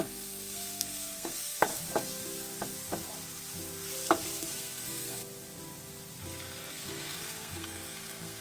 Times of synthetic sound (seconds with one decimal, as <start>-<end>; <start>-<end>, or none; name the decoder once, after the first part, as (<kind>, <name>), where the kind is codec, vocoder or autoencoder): 0.0-1.7 (codec, SNAC); 4.4-5.2; 6.7-8.4